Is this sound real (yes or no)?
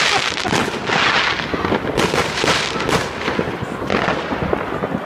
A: yes